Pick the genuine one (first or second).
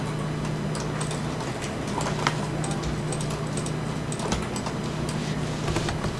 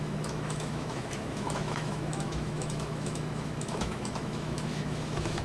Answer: first